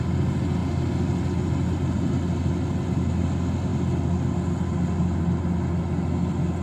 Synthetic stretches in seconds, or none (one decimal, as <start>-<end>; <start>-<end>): none